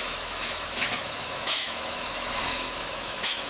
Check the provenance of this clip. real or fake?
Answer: fake